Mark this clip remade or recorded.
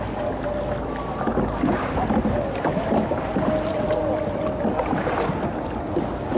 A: recorded